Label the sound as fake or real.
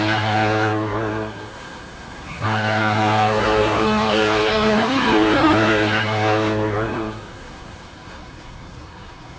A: fake